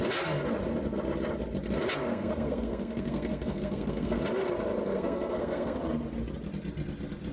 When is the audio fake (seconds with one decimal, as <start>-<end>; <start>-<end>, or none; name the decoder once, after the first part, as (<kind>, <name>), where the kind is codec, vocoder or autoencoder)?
2.1-4.2 (codec, SNAC); 4.9-5.8